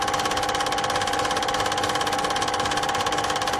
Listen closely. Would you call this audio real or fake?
real